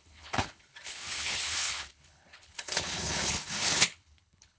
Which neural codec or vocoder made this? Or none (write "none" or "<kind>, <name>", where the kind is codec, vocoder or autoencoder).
codec, HILCodec